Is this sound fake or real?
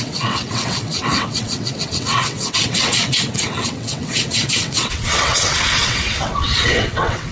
fake